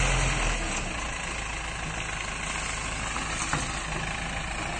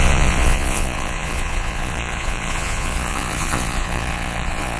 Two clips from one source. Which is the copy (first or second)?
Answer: second